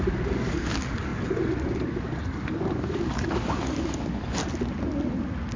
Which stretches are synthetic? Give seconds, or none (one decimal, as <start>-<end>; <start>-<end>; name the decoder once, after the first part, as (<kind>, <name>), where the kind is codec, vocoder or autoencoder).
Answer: 0.0-4.4 (codec, DAC)